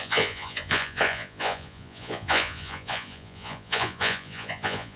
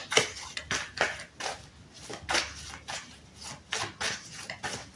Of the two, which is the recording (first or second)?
second